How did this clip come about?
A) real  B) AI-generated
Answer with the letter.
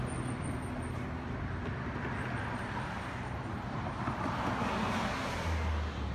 A